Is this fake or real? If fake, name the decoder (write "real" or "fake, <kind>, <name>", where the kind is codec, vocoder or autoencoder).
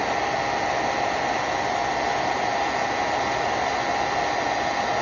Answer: real